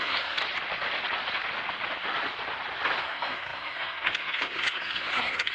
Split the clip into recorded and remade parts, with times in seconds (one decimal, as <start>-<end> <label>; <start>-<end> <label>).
0.0-0.4 remade; 0.4-3.0 recorded; 3.0-5.5 remade